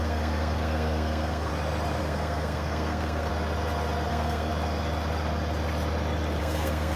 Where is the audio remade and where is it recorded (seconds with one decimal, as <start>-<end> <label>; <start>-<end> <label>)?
0.0-1.5 remade; 1.5-2.0 recorded; 2.0-3.3 remade; 3.3-4.1 recorded; 4.1-4.5 remade; 4.5-6.4 recorded; 6.4-7.0 remade